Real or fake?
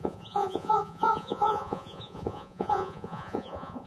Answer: fake